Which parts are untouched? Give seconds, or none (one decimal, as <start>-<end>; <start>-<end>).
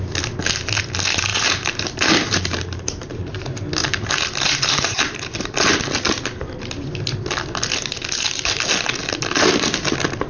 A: 0.0-1.3; 3.3-3.8; 5.7-10.3